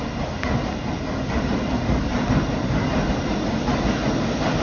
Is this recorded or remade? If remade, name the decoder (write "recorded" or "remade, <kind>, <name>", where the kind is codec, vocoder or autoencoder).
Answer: recorded